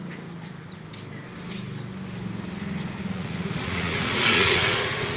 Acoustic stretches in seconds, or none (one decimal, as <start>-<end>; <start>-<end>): 0.0-3.0